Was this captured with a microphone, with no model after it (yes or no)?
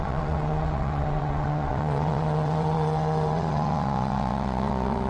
no